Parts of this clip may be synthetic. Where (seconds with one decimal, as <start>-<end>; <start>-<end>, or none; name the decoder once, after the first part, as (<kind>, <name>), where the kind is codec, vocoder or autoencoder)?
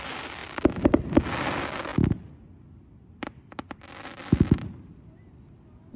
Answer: none